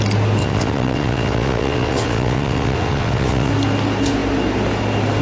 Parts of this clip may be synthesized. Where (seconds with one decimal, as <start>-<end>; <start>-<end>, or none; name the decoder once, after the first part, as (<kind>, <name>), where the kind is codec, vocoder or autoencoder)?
0.4-3.5 (vocoder, WaveNeXt)